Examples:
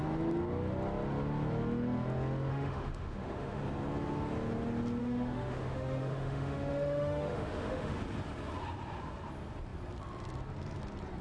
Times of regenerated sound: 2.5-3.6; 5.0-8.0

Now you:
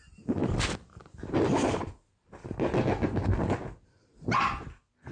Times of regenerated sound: none